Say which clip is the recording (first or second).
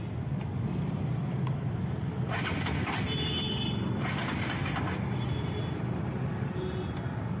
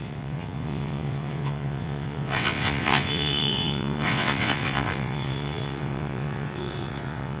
first